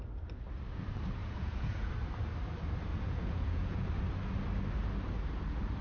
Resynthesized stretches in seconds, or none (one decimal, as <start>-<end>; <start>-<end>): 1.2-1.9; 2.9-3.9